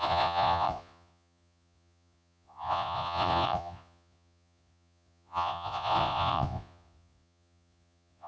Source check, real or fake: fake